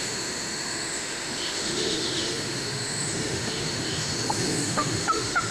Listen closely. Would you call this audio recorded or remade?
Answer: remade